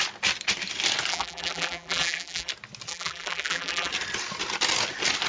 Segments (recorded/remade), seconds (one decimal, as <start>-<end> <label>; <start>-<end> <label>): 0.0-1.1 recorded; 1.1-2.5 remade; 2.5-2.9 recorded; 2.9-3.9 remade; 3.9-5.3 recorded